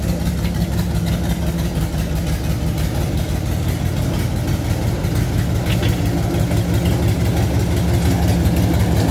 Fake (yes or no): no